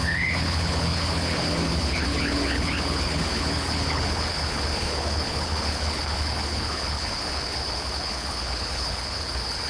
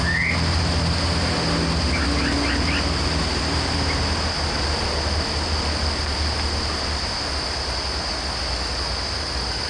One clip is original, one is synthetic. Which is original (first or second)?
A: second